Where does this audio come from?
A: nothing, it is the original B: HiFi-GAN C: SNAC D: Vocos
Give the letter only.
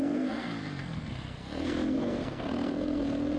C